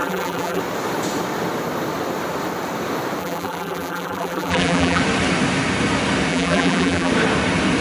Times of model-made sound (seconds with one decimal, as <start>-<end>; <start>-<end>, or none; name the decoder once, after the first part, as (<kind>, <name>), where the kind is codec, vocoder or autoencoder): 0.0-0.6 (vocoder, BigVGAN v2); 3.2-5.0; 6.3-7.1